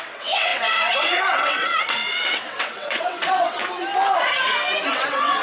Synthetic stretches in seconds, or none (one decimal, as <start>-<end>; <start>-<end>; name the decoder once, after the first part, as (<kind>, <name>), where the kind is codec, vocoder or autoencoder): 0.0-3.6 (vocoder, WaveNeXt); 4.9-5.4